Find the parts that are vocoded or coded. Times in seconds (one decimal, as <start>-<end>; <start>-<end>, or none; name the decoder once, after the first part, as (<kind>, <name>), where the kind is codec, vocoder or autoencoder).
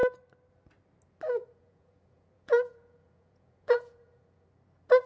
1.4-4.5 (vocoder, Vocos)